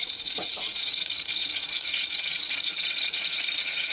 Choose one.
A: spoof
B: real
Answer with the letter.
A